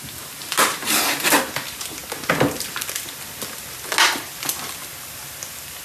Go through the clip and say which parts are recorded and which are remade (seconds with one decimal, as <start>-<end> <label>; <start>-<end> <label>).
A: 0.0-0.4 recorded; 0.4-1.4 remade; 1.4-5.8 recorded